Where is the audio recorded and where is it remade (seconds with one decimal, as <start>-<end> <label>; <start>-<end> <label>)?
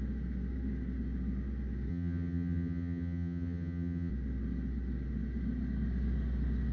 0.0-1.9 recorded; 1.9-4.1 remade; 4.1-6.7 recorded